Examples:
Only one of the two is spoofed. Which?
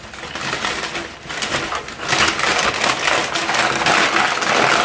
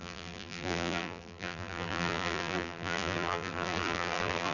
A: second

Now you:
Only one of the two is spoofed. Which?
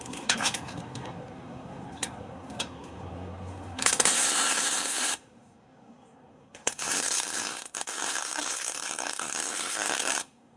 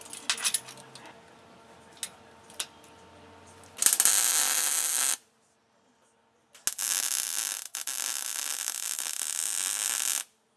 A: first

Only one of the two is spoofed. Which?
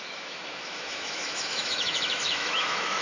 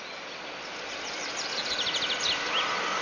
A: first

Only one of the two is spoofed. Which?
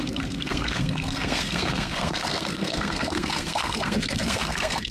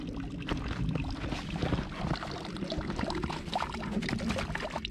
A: first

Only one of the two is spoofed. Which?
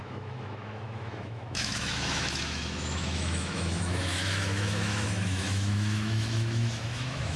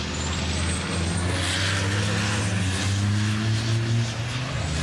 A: first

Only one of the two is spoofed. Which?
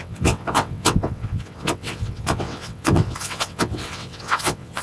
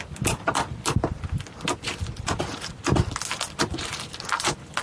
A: first